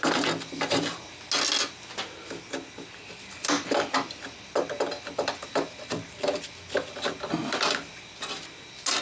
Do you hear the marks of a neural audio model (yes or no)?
no